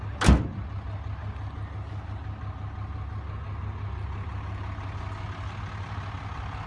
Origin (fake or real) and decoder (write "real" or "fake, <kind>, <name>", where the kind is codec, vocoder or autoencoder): real